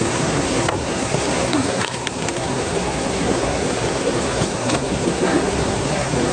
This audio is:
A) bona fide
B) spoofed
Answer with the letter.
B